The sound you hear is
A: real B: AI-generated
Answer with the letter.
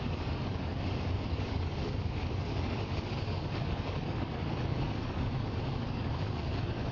B